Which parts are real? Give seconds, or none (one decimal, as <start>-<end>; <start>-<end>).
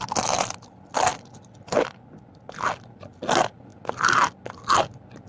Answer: 0.0-5.3